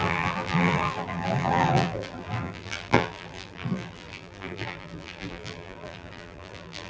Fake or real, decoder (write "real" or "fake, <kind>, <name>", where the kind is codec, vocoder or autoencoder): fake, vocoder, BigVGAN v2